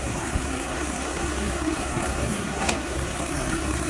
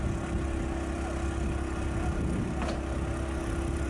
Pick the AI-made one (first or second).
first